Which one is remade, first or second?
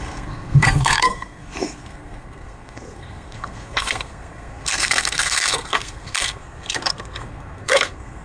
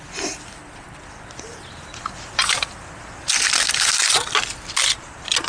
first